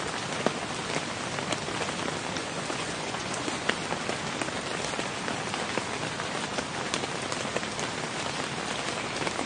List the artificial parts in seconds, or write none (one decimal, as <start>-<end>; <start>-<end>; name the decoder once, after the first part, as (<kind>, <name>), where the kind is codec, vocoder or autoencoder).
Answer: 2.4-3.7 (vocoder, Vocos)